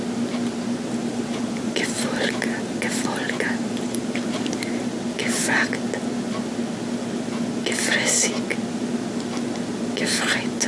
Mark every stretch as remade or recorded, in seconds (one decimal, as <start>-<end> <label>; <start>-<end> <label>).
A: 0.0-1.0 recorded; 1.0-4.9 remade; 4.9-10.7 recorded